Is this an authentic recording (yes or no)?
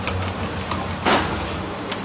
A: yes